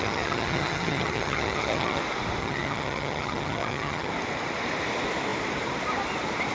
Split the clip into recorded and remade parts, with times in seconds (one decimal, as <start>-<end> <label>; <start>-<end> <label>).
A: 0.0-2.0 remade; 2.0-2.4 recorded; 2.4-4.1 remade; 4.1-6.5 recorded